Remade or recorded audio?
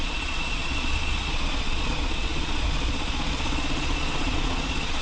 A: remade